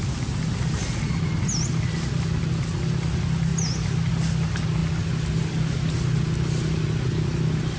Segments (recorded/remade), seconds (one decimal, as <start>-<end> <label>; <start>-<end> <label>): 0.0-7.8 recorded